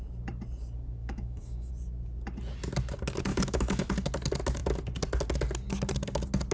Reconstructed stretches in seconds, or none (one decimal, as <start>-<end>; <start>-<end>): 1.0-1.7; 3.3-3.9